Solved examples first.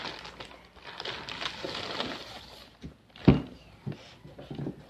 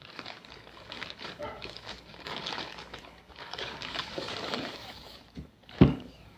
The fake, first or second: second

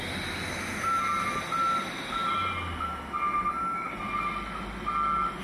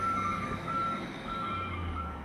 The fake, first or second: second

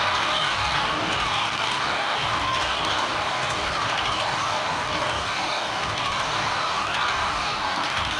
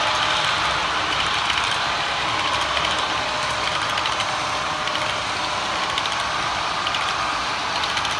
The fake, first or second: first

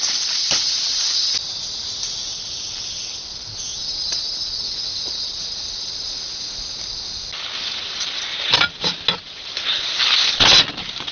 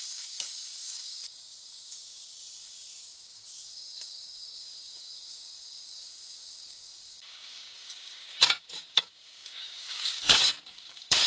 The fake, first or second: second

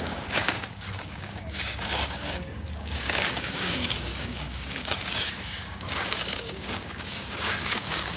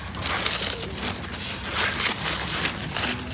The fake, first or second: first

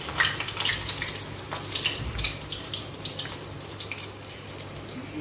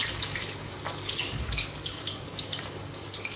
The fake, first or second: second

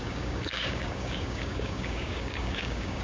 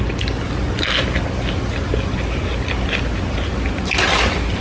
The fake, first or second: first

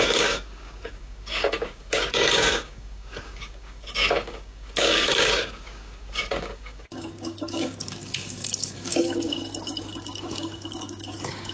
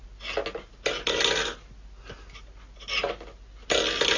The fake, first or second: first